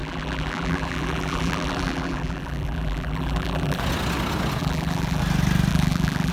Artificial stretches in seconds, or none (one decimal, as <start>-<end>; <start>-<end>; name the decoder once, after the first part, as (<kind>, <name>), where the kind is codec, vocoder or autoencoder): 0.0-3.8 (vocoder, BigVGAN v2); 4.6-5.2; 5.7-6.3